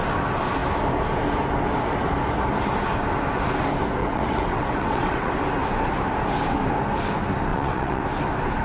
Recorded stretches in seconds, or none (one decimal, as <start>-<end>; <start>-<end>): 0.0-4.0; 5.3-7.5; 8.0-8.6